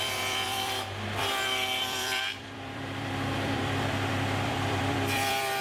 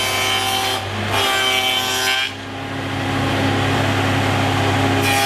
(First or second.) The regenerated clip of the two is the first